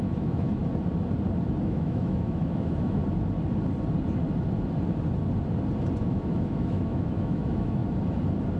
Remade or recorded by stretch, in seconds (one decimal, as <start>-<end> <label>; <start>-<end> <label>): 0.0-0.6 remade; 0.6-1.6 recorded; 1.6-3.0 remade; 3.0-6.0 recorded; 6.0-7.8 remade; 7.8-8.6 recorded